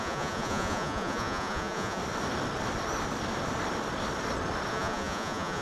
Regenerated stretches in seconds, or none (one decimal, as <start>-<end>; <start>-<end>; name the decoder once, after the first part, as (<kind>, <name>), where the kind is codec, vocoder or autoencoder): 0.0-2.0 (vocoder, Vocos); 4.7-5.6